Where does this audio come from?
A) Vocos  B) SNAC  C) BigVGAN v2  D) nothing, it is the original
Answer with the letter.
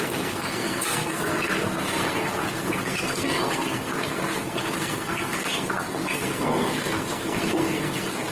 B